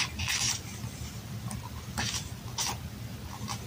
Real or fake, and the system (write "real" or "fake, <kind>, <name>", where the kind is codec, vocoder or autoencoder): real